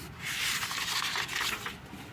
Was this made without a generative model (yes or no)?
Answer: yes